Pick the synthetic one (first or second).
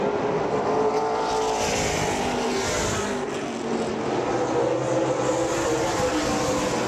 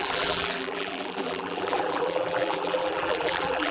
second